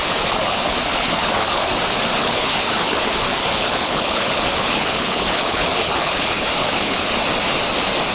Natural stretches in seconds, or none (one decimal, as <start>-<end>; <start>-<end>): 1.8-2.2; 7.1-8.1